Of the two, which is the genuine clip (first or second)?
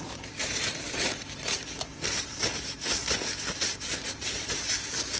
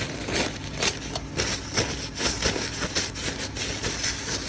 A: second